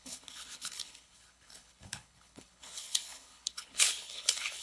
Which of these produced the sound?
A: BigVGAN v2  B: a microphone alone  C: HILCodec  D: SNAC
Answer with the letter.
C